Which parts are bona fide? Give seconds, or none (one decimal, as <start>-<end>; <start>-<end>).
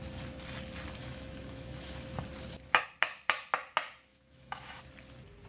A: 0.0-1.0; 2.2-4.1; 4.8-5.5